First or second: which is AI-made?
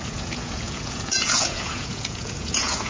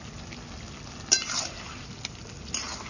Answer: first